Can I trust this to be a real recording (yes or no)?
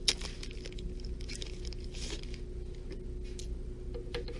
yes